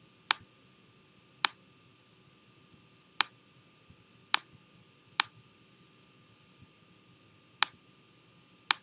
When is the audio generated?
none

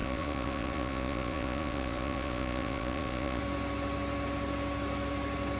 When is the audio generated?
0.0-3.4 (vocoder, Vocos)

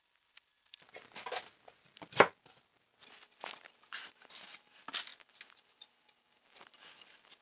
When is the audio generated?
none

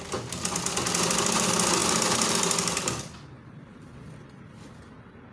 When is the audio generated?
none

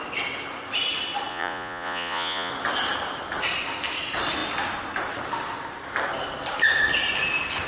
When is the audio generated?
1.3-2.5 (vocoder, Vocos)

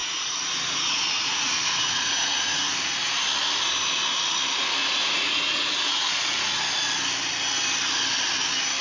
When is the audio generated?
0.0-2.7 (vocoder, Vocos); 4.8-6.5